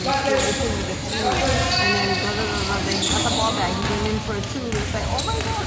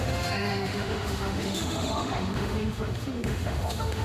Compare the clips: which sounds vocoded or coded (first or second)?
second